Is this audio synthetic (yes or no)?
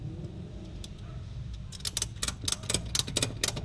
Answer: no